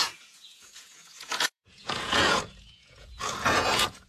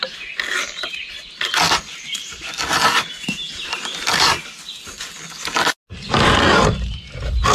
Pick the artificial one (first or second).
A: first